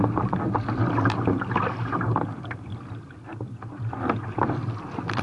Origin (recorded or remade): recorded